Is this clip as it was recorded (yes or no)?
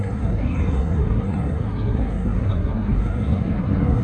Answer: no